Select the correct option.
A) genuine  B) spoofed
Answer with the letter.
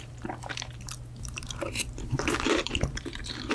B